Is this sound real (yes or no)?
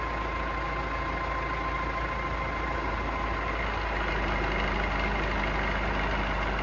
yes